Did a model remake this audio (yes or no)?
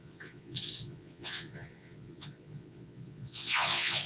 yes